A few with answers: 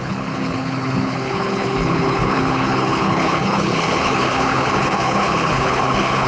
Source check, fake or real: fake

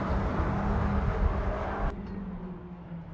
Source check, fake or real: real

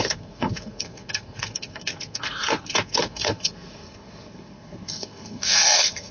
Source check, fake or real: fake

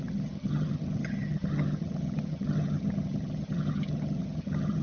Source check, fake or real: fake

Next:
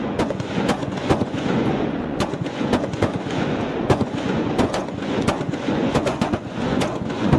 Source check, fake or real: fake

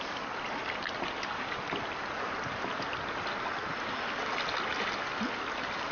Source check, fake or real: real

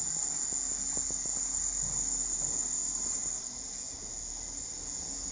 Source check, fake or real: real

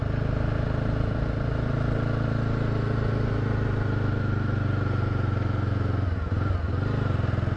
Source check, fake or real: real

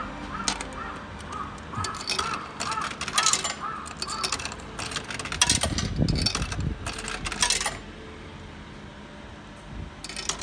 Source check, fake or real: real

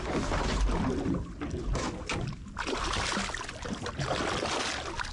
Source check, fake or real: real